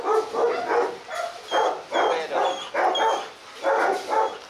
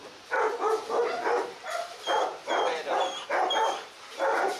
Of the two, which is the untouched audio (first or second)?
first